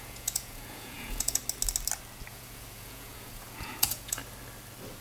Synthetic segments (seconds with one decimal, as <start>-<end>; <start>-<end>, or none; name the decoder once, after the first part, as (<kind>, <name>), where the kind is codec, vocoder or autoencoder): 0.0-1.4 (vocoder, Vocos); 2.3-4.2